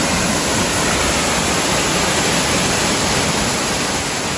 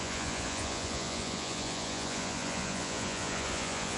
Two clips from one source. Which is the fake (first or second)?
second